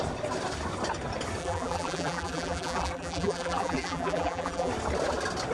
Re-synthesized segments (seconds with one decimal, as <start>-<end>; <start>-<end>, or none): 1.4-4.7